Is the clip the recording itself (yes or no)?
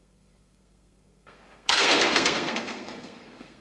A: no